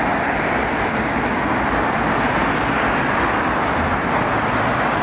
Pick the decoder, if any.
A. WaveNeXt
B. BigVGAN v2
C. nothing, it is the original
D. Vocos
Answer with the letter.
B